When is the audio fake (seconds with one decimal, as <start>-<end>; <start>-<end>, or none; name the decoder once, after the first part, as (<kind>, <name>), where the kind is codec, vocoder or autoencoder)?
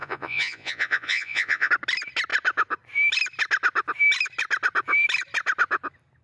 0.0-1.7 (vocoder, Vocos)